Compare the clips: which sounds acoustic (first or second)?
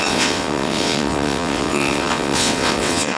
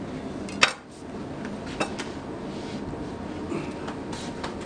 second